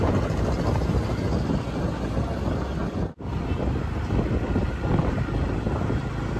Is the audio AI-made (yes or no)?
no